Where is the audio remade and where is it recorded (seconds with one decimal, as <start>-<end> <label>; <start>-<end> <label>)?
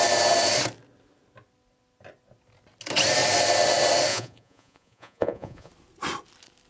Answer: 0.0-4.1 recorded; 4.1-5.7 remade; 5.7-6.7 recorded